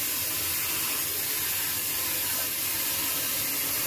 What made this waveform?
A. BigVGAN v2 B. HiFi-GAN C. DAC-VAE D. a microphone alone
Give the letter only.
D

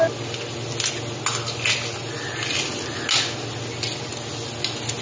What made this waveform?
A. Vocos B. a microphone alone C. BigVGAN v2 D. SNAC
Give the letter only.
B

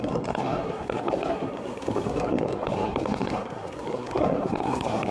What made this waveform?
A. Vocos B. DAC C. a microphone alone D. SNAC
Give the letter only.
D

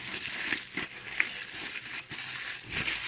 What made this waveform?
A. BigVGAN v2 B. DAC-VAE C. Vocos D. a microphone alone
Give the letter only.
D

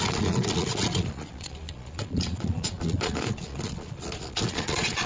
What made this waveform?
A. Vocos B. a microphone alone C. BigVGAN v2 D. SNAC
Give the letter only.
A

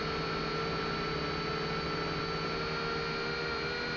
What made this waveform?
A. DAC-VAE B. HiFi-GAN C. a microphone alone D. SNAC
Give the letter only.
C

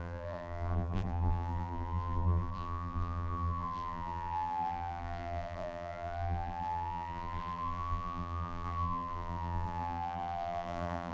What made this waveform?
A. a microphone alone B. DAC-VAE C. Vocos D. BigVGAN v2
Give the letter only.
D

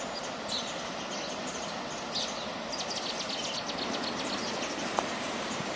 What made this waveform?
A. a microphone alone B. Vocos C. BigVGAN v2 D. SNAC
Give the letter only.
A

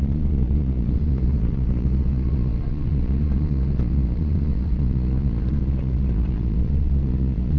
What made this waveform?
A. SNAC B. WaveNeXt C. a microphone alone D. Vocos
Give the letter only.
D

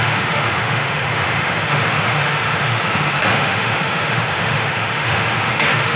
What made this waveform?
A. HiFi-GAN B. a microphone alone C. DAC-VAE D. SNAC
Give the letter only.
C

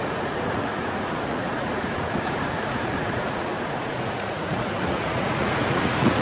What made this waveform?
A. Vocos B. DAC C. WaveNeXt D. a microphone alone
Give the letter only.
A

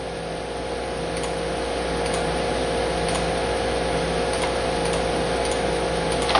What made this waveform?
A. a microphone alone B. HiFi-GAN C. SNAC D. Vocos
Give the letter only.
A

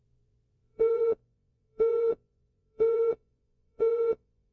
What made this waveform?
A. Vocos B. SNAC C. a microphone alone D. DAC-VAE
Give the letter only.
A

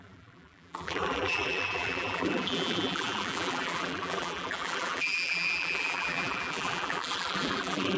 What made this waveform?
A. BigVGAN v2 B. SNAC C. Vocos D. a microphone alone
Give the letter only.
A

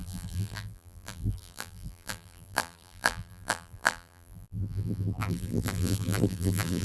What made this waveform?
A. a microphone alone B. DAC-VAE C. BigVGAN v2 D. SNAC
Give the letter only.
C